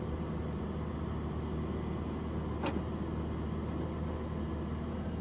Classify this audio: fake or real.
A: real